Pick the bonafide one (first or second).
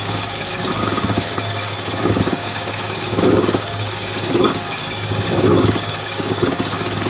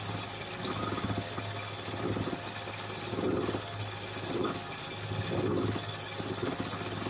second